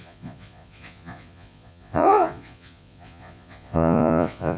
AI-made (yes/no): yes